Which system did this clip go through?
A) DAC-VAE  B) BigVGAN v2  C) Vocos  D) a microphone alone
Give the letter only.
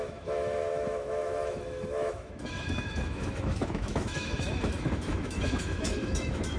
A